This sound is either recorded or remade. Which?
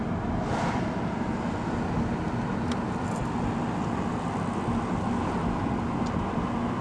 recorded